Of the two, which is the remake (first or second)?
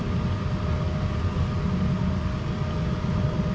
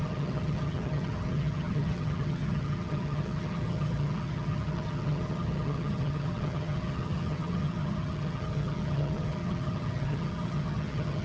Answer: second